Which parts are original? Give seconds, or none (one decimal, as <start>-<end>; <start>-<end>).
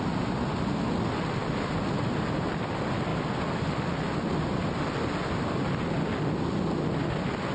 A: 0.0-7.5